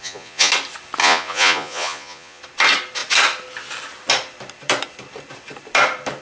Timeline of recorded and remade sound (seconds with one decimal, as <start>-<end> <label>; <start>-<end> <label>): 0.0-0.5 remade; 0.5-1.0 recorded; 1.0-2.4 remade; 2.4-6.2 recorded